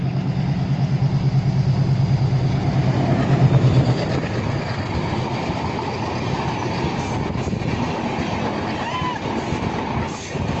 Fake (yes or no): no